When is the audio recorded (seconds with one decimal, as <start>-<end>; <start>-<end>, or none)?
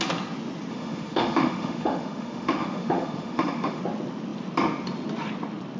0.0-0.7; 3.8-5.8